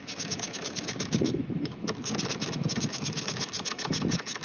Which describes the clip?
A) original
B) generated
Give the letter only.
B